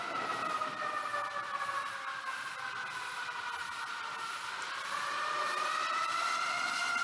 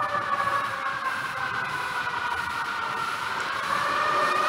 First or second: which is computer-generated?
second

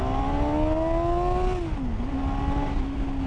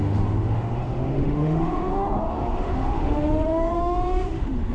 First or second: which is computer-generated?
second